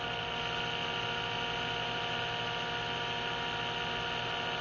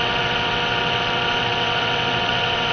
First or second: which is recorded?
first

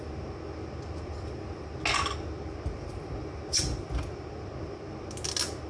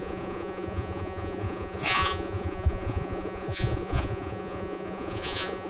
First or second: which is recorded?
first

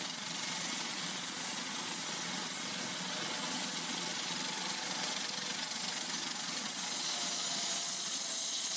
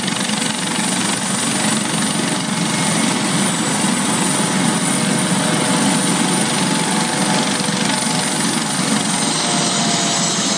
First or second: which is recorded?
second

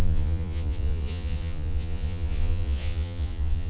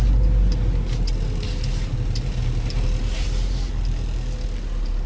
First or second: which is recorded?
second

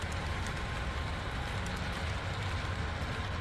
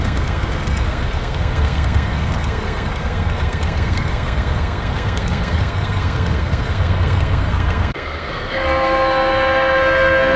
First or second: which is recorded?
first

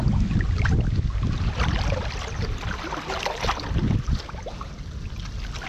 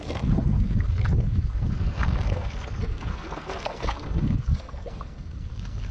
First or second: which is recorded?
first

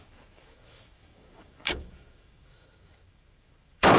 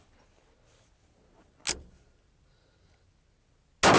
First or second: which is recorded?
second